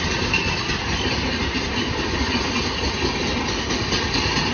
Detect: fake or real real